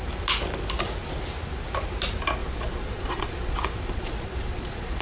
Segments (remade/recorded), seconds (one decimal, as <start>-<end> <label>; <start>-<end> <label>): 0.0-2.4 recorded; 2.4-5.0 remade